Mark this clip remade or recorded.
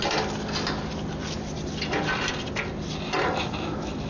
recorded